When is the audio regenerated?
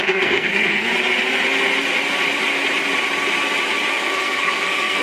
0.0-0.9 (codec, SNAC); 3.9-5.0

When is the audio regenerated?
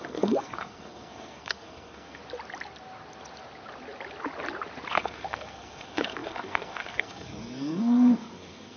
0.0-2.2 (codec, SNAC); 4.9-8.8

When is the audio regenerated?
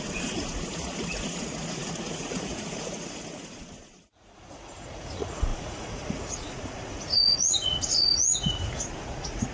0.0-9.5 (vocoder, Vocos)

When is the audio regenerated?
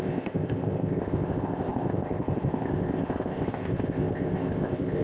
0.0-5.0 (codec, ZipCodec)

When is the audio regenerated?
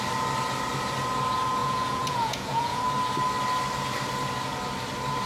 1.6-2.8 (vocoder, Vocos)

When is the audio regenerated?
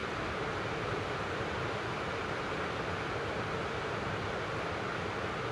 0.0-3.3 (vocoder, BigVGAN v2)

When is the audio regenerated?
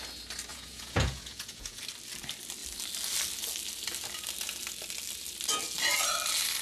0.5-1.8 (vocoder, Vocos)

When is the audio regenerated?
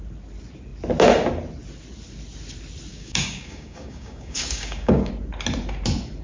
2.9-5.1 (codec, DAC)